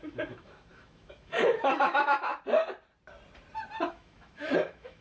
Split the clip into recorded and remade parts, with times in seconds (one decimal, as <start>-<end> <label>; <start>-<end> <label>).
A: 0.0-2.3 remade; 2.3-3.9 recorded; 3.9-5.0 remade